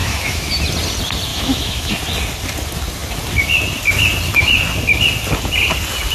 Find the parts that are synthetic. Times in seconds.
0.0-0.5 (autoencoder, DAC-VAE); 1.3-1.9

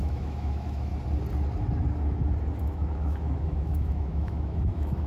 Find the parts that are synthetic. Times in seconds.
0.0-0.9 (autoencoder, DAC-VAE); 2.6-5.1

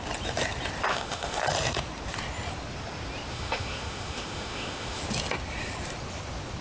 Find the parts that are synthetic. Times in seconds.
0.9-1.4 (autoencoder, DAC-VAE); 3.3-5.0

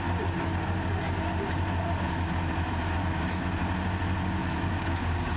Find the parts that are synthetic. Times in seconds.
3.0-3.6 (autoencoder, DAC-VAE); 4.4-5.0

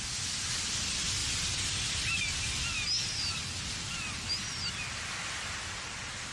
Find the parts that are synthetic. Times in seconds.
none

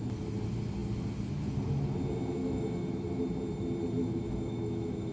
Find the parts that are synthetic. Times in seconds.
2.4-3.2 (autoencoder, DAC-VAE); 4.0-5.1

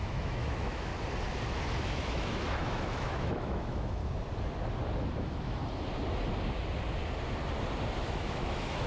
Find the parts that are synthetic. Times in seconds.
0.0-0.9 (autoencoder, DAC-VAE); 1.8-4.0; 5.1-5.6; 8.0-8.9